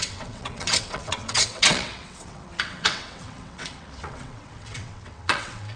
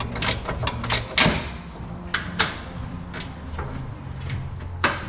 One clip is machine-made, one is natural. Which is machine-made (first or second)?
first